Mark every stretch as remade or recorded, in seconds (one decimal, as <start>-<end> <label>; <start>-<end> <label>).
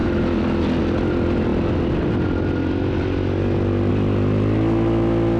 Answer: 0.0-5.4 recorded